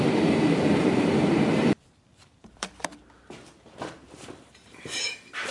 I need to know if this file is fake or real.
fake